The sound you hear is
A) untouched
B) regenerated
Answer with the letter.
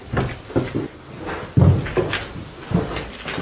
A